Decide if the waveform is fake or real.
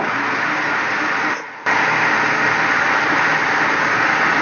real